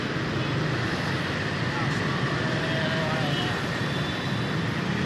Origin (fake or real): real